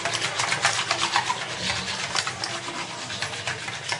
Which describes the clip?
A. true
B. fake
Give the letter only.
A